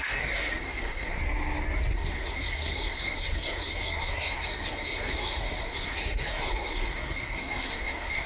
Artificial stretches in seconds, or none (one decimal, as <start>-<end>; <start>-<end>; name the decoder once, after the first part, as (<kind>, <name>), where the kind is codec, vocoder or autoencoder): 0.0-1.2 (codec, SNAC); 1.9-8.3